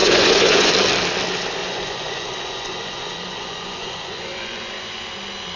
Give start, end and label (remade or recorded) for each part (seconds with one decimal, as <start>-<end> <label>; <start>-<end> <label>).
0.0-0.7 remade; 0.7-1.6 recorded; 1.6-5.0 remade; 5.0-5.6 recorded